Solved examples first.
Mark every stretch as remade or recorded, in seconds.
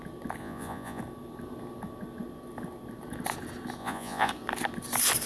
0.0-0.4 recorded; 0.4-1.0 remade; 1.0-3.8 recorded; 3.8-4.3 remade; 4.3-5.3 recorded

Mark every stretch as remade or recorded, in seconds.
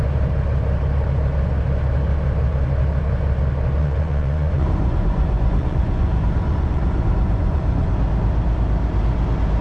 0.0-3.8 recorded; 3.8-7.9 remade; 7.9-9.6 recorded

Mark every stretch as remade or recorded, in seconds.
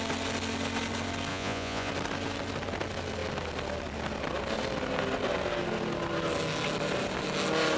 0.0-1.3 recorded; 1.3-1.9 remade; 1.9-7.8 recorded